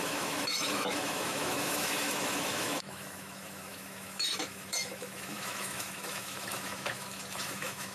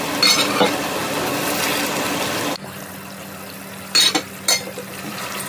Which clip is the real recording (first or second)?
second